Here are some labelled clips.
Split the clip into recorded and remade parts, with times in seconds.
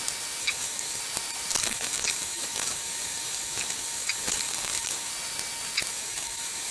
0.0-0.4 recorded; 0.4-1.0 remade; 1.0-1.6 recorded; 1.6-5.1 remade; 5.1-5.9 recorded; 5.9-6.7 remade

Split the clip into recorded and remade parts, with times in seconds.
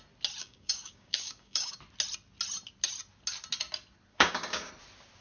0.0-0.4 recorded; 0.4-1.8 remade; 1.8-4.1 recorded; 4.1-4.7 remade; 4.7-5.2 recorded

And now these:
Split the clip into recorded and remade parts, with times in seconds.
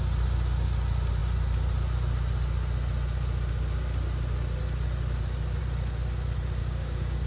0.0-6.6 recorded; 6.6-7.3 remade